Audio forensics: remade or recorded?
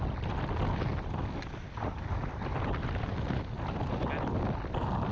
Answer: recorded